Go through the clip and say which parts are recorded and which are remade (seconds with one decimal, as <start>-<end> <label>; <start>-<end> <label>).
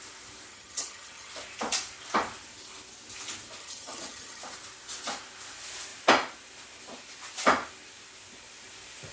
0.0-0.5 recorded; 0.5-1.3 remade; 1.3-3.6 recorded; 3.6-4.4 remade; 4.4-9.1 recorded